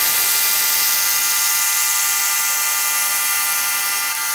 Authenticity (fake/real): real